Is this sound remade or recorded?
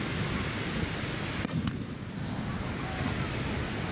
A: recorded